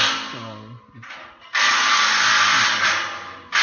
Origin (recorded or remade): recorded